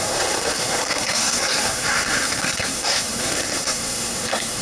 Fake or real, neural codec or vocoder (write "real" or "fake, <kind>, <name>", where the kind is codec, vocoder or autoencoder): fake, codec, SNAC